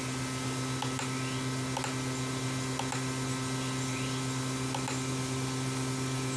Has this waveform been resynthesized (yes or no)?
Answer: no